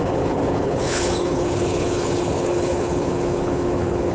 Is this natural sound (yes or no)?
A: no